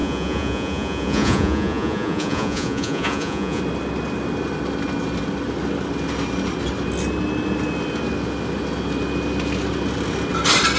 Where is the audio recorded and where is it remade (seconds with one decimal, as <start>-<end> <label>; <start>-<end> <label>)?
0.0-3.6 remade; 3.6-10.8 recorded